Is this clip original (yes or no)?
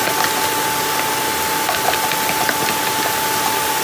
yes